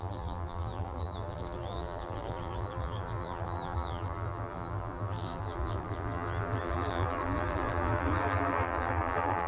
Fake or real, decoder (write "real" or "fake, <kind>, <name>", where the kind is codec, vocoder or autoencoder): fake, vocoder, BigVGAN v2